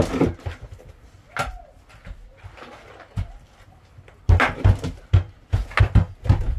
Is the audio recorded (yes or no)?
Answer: yes